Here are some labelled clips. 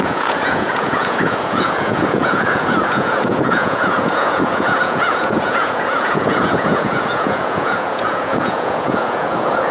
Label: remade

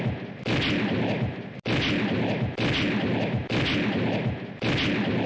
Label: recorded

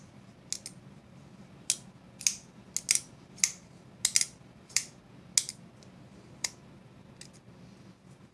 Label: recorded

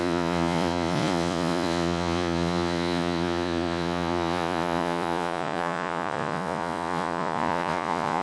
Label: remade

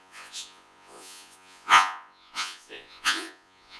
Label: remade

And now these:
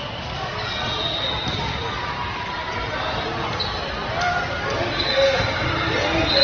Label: recorded